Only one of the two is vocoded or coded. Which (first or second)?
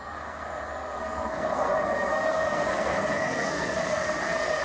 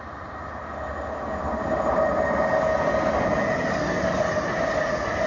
first